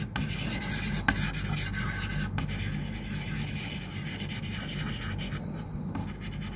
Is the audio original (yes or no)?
yes